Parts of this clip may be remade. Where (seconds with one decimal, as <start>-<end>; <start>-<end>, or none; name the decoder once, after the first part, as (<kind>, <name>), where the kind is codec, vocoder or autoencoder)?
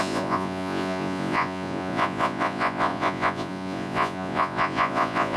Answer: 0.0-5.4 (vocoder, Vocos)